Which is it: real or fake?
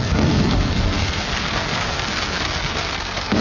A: fake